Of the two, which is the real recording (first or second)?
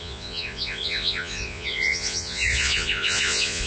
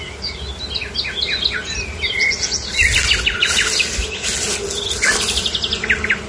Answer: second